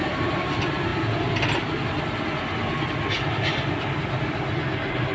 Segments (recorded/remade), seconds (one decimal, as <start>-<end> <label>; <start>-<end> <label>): 0.0-5.1 recorded